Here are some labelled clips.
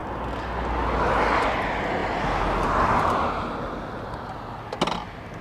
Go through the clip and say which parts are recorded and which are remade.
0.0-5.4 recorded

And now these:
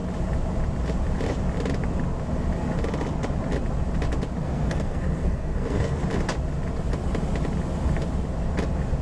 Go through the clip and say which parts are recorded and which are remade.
0.0-4.4 recorded; 4.4-6.0 remade; 6.0-9.0 recorded

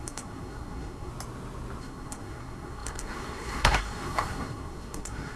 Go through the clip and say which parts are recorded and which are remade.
0.0-1.1 remade; 1.1-1.8 recorded; 1.8-5.4 remade

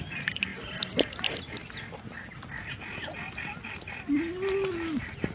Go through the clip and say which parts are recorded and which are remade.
0.0-5.3 recorded

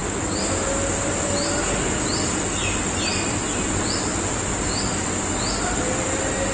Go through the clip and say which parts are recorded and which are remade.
0.0-6.5 recorded

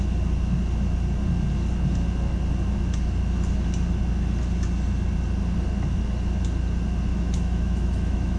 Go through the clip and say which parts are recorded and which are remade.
0.0-7.1 recorded; 7.1-8.4 remade

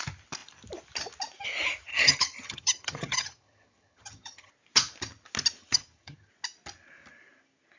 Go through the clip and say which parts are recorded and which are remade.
0.0-1.9 recorded; 1.9-4.5 remade; 4.5-5.6 recorded; 5.6-6.3 remade; 6.3-7.8 recorded

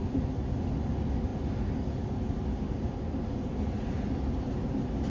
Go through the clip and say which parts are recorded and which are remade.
0.0-5.1 recorded